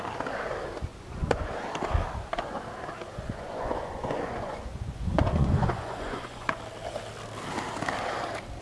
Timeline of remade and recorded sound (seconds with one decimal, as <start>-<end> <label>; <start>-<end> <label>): 0.0-0.9 recorded; 0.9-1.5 remade; 1.5-3.1 recorded; 3.1-6.6 remade; 6.6-8.6 recorded